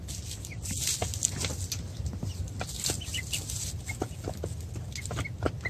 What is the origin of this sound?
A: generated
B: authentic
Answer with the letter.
B